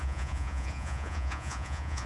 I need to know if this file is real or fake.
fake